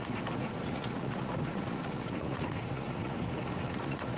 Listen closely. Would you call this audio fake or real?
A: fake